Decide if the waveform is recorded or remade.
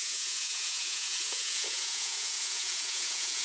remade